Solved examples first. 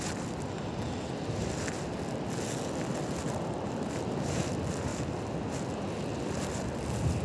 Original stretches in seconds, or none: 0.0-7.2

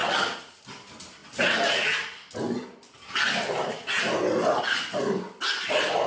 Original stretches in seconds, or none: 0.0-6.1

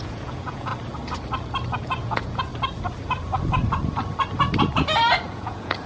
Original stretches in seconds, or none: 0.7-1.7; 2.5-5.2

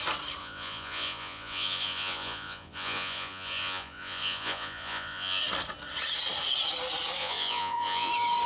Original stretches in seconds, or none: 0.0-0.4; 5.4-7.2; 8.1-8.5

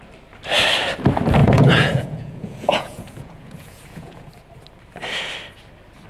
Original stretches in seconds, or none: 0.0-1.4; 4.3-6.1

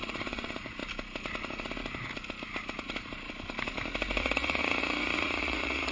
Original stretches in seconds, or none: 0.8-4.2